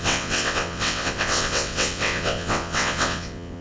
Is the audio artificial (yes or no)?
yes